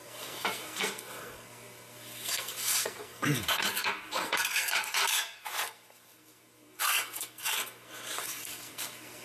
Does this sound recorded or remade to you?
remade